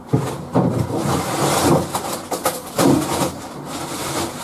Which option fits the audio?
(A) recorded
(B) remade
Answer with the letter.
A